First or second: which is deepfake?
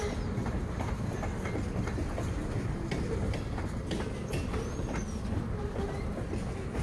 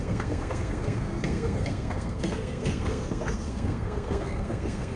second